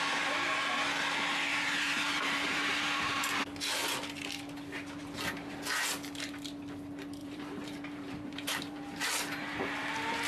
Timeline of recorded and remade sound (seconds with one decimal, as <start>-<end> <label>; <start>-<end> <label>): 0.0-1.5 recorded; 1.5-3.2 remade; 3.2-7.2 recorded; 7.2-10.3 remade

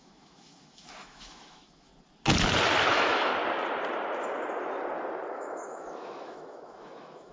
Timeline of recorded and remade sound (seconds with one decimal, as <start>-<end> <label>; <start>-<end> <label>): 0.0-1.9 remade; 1.9-2.9 recorded; 2.9-3.3 remade; 3.3-5.3 recorded; 5.3-7.3 remade

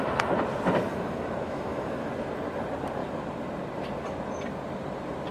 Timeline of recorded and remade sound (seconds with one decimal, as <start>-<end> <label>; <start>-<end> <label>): 0.0-0.9 recorded; 0.9-2.1 remade; 2.1-5.3 recorded

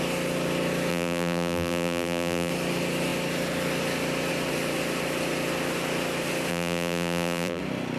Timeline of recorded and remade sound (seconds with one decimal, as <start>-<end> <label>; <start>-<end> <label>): 0.0-0.9 recorded; 0.9-2.5 remade; 2.5-6.5 recorded; 6.5-7.6 remade; 7.6-8.0 recorded

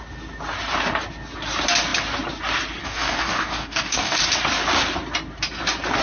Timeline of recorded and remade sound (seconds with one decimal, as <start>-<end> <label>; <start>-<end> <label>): 0.0-2.8 recorded; 2.8-4.2 remade; 4.2-6.0 recorded

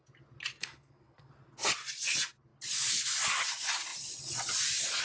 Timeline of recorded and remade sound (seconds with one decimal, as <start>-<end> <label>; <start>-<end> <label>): 0.0-0.5 recorded; 0.5-1.3 remade; 1.3-5.0 recorded

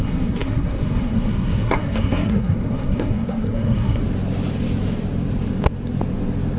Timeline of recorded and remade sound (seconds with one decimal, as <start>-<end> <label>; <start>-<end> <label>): 0.0-4.0 remade; 4.0-6.6 recorded

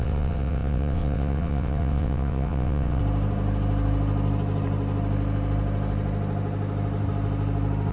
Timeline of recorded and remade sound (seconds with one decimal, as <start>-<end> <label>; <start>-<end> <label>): 0.0-3.0 remade; 3.0-7.9 recorded